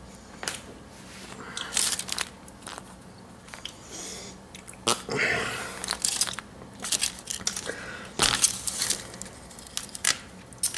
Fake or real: real